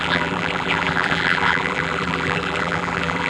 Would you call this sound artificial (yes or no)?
yes